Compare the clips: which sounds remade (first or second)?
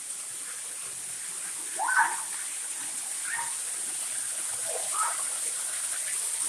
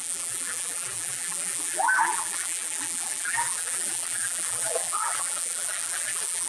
second